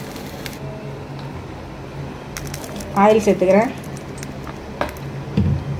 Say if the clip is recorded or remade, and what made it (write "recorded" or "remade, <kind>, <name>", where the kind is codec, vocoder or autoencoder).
recorded